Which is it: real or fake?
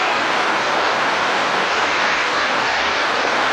fake